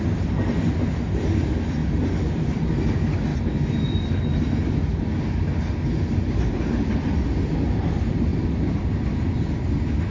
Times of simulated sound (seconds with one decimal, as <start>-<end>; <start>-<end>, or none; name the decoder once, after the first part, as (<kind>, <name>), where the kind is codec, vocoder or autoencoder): 8.3-8.9 (vocoder, BigVGAN v2)